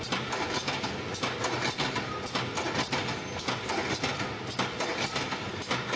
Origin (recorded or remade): recorded